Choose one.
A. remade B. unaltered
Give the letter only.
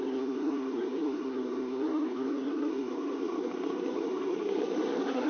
A